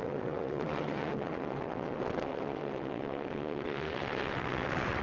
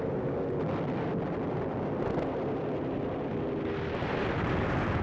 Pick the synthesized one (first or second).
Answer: first